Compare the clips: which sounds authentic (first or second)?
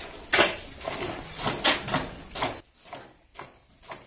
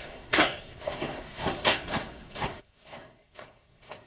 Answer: first